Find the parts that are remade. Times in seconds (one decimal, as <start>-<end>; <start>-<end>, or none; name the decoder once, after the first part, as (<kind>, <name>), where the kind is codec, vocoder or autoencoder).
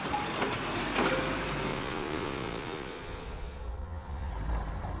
1.7-4.3 (vocoder, Vocos)